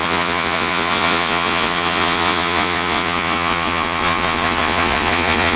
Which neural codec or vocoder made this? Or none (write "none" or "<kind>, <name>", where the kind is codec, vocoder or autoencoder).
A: vocoder, Vocos